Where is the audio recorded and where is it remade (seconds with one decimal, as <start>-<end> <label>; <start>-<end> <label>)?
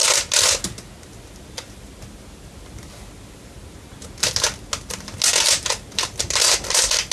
0.0-7.1 recorded